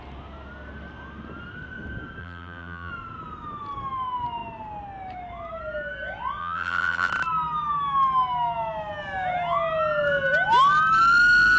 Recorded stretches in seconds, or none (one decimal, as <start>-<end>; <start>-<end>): 0.0-2.2; 2.9-6.4; 7.1-11.6